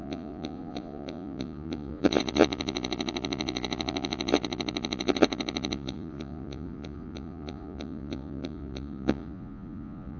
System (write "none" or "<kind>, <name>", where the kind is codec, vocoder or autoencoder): vocoder, Vocos